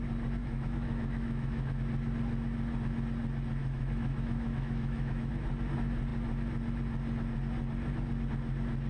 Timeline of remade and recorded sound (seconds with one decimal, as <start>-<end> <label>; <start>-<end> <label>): 0.0-0.4 recorded; 0.4-1.8 remade; 1.8-3.6 recorded; 3.6-5.3 remade; 5.3-8.9 recorded